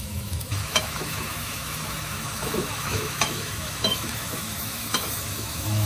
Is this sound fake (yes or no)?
yes